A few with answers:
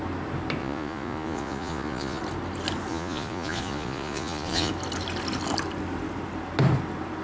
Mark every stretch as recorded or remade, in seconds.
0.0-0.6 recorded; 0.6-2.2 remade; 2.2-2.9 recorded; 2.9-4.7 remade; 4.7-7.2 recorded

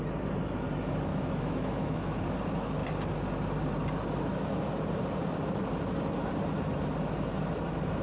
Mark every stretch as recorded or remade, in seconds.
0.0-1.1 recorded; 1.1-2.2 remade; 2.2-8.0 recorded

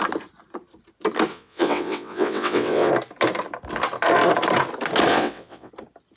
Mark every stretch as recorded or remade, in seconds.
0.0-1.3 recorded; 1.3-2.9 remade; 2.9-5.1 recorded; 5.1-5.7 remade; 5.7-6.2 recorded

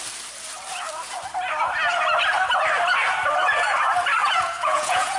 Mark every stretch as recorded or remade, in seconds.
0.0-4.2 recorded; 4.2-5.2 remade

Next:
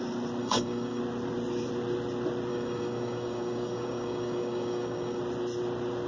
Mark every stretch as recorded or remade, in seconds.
0.0-0.4 recorded; 0.4-1.0 remade; 1.0-2.5 recorded; 2.5-5.2 remade; 5.2-6.1 recorded